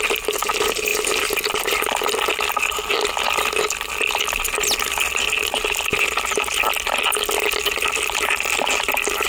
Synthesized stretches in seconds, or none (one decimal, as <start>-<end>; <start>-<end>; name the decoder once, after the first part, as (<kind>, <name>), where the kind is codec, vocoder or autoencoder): none